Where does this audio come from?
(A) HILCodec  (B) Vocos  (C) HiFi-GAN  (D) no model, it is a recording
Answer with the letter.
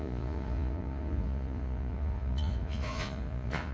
B